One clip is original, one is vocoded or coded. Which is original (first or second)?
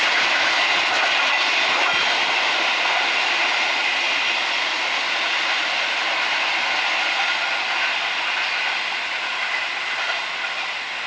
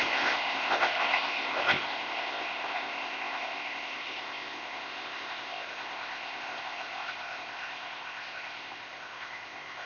first